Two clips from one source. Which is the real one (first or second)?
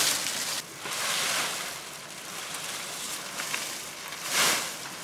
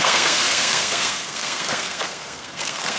first